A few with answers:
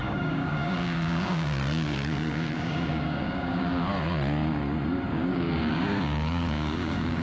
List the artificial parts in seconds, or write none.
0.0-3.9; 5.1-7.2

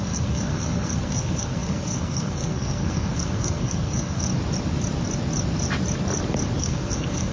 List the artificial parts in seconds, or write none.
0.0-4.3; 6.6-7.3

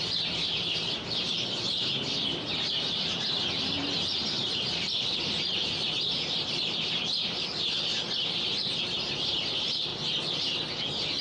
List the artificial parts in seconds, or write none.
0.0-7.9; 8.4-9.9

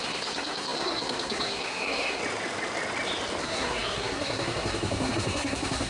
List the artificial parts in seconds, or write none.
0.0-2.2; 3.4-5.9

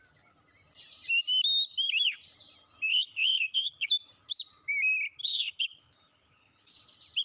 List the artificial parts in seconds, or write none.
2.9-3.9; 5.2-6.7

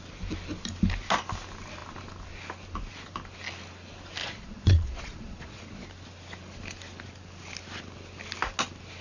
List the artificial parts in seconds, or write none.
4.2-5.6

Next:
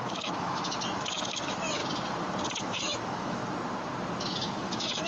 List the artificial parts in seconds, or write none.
0.0-1.8; 2.6-3.4; 4.2-5.1

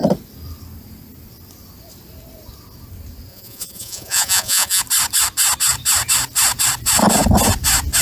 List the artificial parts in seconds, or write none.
3.3-4.8